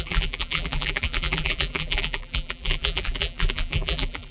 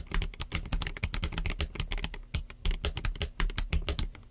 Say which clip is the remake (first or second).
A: first